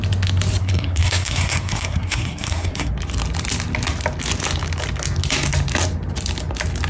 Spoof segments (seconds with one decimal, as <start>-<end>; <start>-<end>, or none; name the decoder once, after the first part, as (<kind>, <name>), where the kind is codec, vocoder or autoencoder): 0.6-2.9 (codec, SNAC)